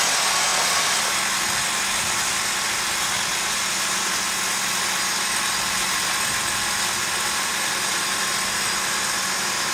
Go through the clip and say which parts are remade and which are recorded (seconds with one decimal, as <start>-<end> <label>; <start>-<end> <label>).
0.0-9.7 recorded